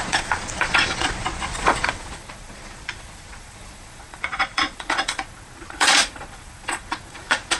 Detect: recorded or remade remade